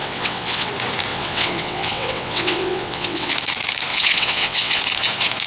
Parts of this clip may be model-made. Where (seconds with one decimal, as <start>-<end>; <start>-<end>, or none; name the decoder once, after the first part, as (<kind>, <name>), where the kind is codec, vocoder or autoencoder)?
0.0-0.7 (vocoder, WaveNeXt); 1.1-3.3; 3.9-4.8